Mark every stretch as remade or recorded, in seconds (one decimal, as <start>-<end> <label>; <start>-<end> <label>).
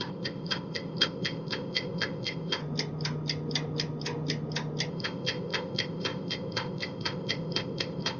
0.0-2.6 remade; 2.6-4.9 recorded; 4.9-8.2 remade